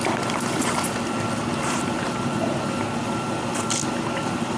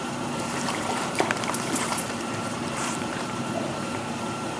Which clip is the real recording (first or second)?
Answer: first